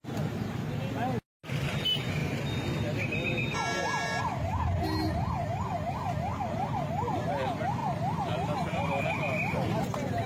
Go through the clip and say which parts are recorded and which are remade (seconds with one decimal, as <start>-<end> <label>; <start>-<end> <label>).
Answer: 0.0-7.8 recorded; 7.8-9.0 remade; 9.0-10.3 recorded